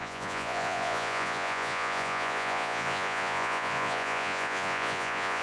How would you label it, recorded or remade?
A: remade